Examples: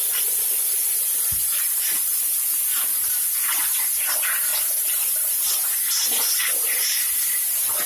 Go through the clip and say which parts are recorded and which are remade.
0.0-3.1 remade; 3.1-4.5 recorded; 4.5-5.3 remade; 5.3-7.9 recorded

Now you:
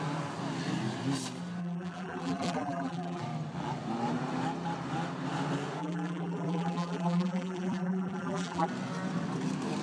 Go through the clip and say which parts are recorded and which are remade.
0.0-1.6 recorded; 1.6-3.2 remade; 3.2-5.8 recorded; 5.8-8.7 remade; 8.7-9.8 recorded